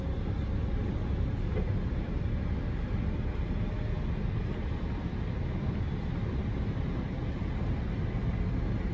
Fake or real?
real